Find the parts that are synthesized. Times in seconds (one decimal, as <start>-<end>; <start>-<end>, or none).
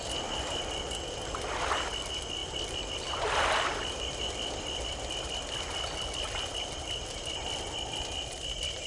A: 2.4-4.8